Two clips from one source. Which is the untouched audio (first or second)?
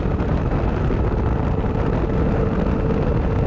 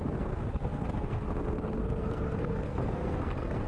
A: first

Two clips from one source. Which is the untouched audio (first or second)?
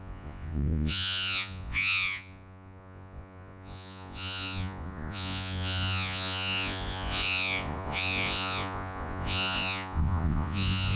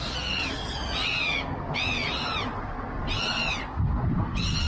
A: second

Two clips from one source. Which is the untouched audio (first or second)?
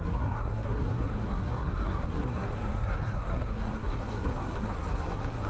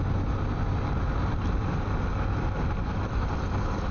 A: second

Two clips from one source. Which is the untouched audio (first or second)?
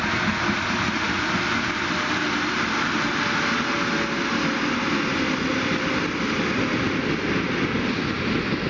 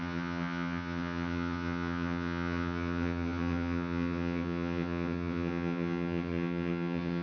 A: first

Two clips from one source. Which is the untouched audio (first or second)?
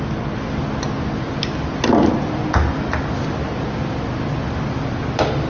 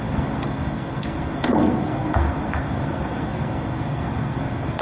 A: first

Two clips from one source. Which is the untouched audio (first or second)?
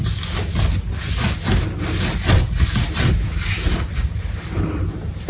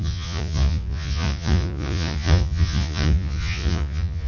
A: first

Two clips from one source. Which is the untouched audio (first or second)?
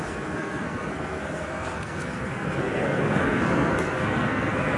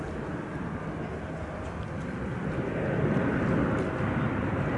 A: second